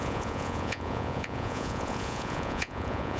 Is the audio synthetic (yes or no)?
yes